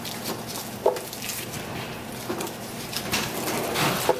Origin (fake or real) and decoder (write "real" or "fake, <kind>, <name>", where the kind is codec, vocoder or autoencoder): real